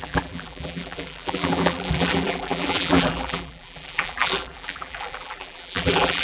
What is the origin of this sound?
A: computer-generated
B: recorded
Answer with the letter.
A